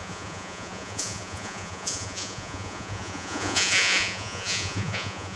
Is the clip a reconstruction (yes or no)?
yes